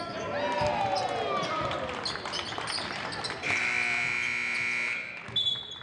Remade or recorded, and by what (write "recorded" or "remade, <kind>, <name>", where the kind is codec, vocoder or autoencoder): recorded